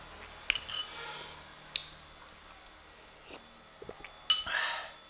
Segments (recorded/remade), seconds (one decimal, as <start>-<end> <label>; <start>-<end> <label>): 0.0-5.1 recorded